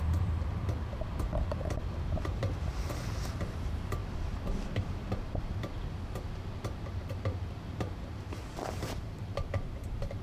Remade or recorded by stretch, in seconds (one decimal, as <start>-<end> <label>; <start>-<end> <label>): 0.0-4.0 remade; 4.0-6.3 recorded; 6.3-10.2 remade